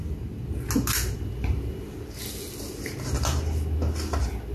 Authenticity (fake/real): real